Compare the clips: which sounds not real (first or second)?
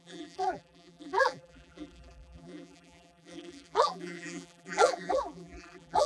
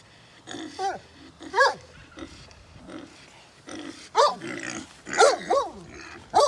first